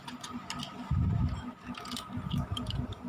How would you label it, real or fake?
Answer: real